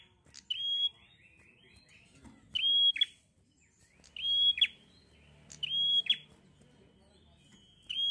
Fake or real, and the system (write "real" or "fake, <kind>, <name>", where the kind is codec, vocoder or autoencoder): real